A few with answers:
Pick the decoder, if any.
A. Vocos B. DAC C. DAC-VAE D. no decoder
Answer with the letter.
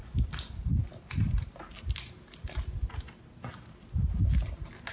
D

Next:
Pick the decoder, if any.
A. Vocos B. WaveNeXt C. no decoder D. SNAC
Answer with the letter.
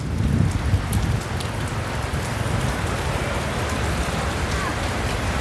C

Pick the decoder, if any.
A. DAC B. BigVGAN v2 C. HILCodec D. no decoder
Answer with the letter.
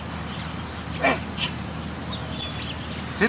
D